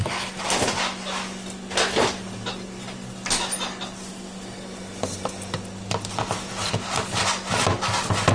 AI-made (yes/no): no